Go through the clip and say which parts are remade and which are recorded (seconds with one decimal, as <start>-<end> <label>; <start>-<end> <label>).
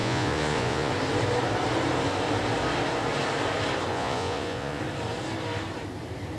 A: 0.0-0.9 remade; 0.9-3.9 recorded; 3.9-4.8 remade; 4.8-6.4 recorded